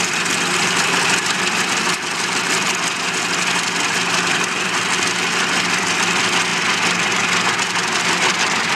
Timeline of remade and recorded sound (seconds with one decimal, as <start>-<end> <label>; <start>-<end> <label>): 0.0-8.8 recorded